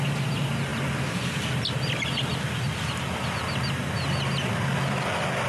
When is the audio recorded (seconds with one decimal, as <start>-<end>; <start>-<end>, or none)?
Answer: 0.0-5.5